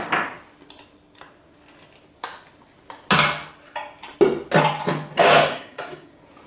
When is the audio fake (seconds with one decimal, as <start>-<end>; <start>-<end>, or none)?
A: 5.2-6.1